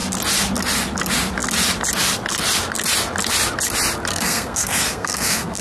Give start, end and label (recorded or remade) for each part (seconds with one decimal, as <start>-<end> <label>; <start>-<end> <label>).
0.0-4.1 recorded; 4.1-5.6 remade